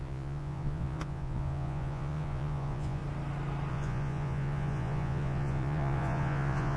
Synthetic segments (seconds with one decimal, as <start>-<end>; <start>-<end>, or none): 0.0-3.0; 3.7-6.8